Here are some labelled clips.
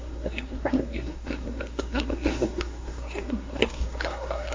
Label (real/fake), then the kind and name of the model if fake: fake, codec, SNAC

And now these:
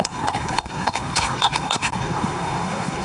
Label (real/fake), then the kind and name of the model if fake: fake, codec, SNAC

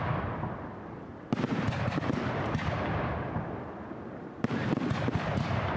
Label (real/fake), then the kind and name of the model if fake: real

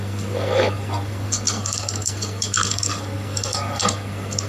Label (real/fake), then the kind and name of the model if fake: fake, codec, SNAC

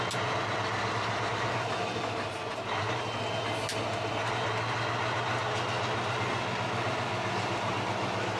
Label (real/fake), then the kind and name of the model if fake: real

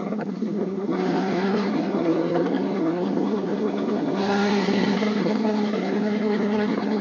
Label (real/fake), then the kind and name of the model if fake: fake, codec, SNAC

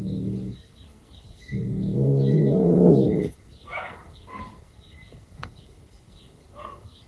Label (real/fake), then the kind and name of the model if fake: fake, codec, SNAC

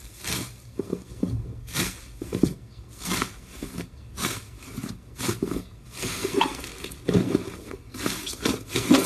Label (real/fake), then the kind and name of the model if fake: fake, codec, SNAC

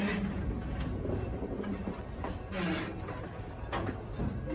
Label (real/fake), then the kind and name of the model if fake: real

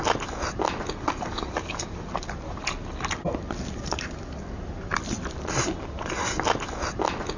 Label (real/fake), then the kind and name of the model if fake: real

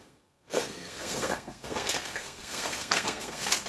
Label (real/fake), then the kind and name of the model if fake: fake, codec, SNAC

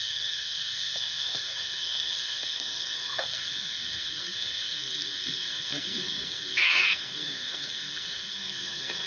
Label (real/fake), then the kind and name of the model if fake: fake, codec, SNAC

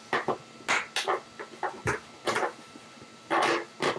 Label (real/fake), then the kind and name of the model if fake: real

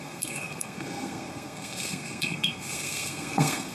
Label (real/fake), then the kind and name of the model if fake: fake, codec, SNAC